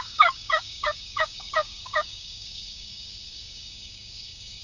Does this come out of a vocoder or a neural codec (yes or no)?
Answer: yes